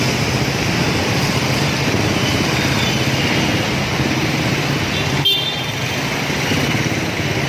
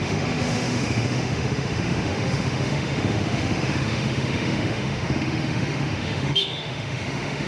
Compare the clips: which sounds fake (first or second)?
second